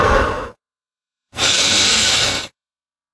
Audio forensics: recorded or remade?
remade